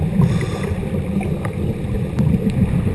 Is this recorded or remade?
recorded